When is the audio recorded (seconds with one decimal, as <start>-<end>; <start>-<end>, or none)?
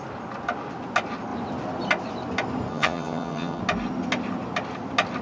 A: 0.0-2.7; 3.6-5.2